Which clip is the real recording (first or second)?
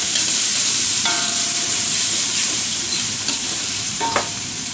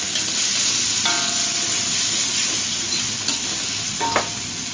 second